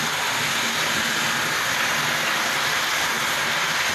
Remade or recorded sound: recorded